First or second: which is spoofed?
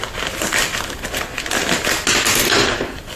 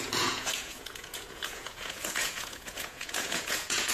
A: second